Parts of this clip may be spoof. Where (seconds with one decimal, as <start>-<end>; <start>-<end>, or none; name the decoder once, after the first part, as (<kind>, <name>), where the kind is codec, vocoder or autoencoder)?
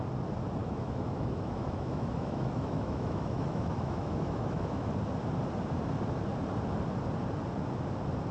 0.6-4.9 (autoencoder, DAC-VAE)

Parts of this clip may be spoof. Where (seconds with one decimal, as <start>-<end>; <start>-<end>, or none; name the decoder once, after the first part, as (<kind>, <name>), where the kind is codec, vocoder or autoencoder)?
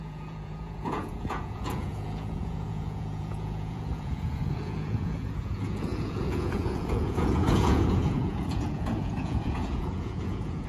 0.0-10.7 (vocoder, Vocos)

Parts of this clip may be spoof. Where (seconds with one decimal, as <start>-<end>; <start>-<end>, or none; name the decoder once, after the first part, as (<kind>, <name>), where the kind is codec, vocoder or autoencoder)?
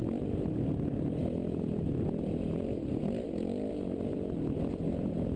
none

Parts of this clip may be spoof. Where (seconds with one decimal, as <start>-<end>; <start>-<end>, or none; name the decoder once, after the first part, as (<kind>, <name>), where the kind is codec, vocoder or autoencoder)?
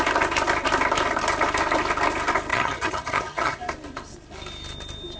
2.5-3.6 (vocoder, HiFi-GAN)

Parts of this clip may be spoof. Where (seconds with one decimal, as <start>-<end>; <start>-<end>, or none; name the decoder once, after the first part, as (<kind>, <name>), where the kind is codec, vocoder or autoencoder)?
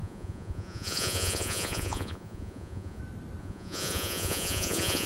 0.0-3.0 (vocoder, Vocos); 3.4-5.1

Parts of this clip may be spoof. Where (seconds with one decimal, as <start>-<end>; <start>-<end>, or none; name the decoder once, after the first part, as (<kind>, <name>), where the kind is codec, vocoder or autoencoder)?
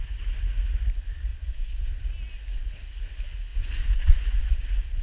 1.3-2.0 (vocoder, Vocos); 3.5-4.4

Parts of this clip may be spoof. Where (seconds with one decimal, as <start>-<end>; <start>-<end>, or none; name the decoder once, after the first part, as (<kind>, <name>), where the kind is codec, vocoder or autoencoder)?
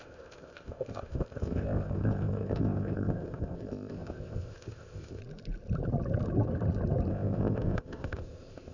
0.0-5.2 (codec, ZipCodec); 7.1-8.7